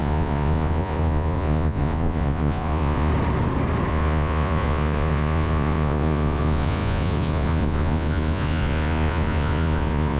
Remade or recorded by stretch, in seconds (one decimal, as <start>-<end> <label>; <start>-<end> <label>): 0.0-3.1 remade; 3.1-3.9 recorded; 3.9-10.2 remade